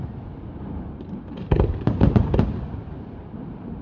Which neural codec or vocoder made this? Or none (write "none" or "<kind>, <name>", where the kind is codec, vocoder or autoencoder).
vocoder, BigVGAN v2